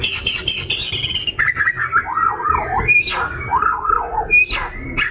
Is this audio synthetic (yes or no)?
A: no